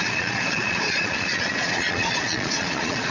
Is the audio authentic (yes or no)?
no